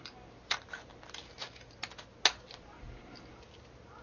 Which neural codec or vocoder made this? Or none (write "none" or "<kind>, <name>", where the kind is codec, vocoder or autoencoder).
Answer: none